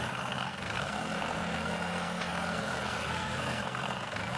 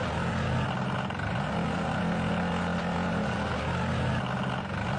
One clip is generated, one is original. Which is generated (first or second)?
first